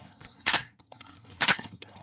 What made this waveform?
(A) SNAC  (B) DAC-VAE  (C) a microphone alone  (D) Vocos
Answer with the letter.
A